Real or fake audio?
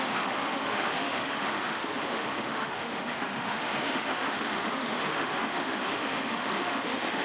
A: fake